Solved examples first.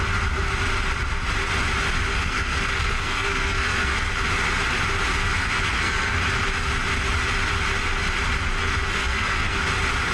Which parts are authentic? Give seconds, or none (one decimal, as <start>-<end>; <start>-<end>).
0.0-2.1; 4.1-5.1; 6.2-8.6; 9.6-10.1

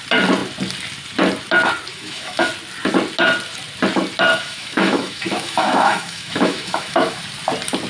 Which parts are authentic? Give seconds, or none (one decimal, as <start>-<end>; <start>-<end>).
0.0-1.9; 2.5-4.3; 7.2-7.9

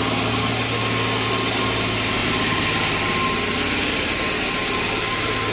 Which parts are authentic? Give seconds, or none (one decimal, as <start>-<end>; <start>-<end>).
0.0-2.2; 3.1-5.5